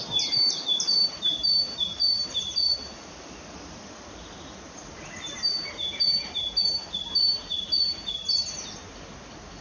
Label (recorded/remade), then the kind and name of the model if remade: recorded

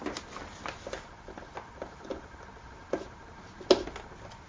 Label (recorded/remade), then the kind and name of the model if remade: recorded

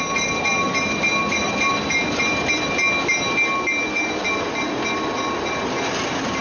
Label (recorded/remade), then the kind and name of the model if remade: recorded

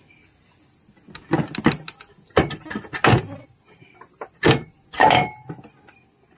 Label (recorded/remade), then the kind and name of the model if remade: recorded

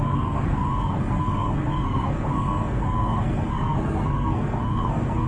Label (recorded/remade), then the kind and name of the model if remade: remade, codec, SNAC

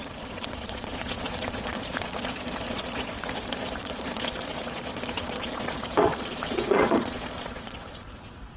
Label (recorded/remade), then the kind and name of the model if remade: remade, vocoder, Vocos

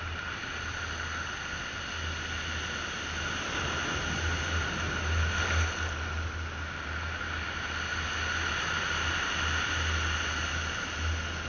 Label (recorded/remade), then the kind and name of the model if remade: recorded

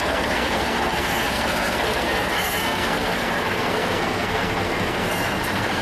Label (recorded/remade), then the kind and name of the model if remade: remade, codec, SNAC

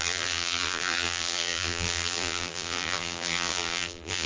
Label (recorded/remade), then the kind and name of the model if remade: remade, vocoder, BigVGAN v2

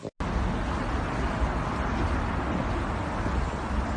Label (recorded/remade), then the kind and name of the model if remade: recorded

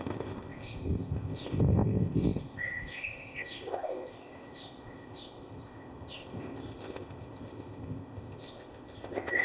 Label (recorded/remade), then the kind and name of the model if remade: remade, codec, ZipCodec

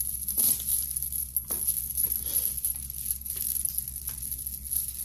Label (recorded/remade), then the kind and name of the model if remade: recorded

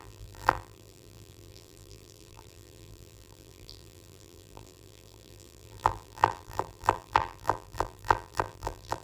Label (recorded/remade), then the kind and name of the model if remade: remade, vocoder, BigVGAN v2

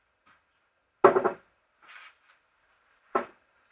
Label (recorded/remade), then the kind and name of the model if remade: recorded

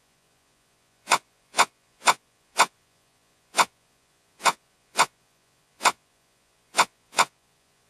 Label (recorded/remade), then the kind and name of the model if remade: remade, vocoder, Vocos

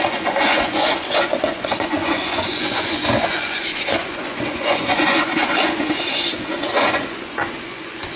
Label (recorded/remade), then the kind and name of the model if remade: remade, vocoder, Vocos